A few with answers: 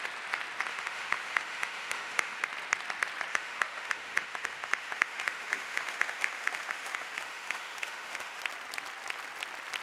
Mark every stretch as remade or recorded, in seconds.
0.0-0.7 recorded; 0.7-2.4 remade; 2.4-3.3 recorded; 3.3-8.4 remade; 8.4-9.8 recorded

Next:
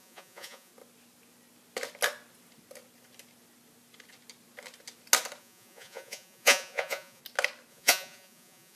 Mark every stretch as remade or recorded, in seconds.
0.0-0.7 remade; 0.7-5.4 recorded; 5.4-7.2 remade; 7.2-7.7 recorded; 7.7-8.8 remade